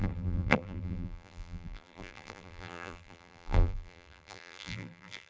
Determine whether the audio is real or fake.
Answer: fake